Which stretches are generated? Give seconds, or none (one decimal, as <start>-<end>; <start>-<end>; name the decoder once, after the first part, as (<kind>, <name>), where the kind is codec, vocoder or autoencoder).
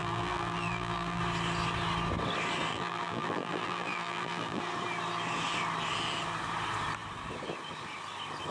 0.0-1.2 (vocoder, BigVGAN v2); 2.7-4.6